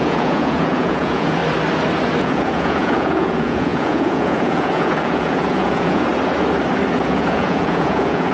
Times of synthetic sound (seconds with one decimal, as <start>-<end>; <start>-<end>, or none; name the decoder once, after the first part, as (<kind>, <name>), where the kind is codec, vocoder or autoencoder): 0.0-1.4 (vocoder, Vocos); 2.2-6.1; 6.9-8.3